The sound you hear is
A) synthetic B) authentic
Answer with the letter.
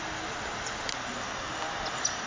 B